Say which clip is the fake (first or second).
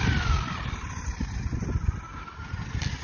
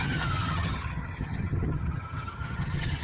second